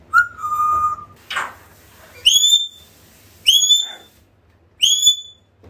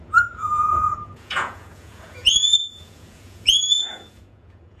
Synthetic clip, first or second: second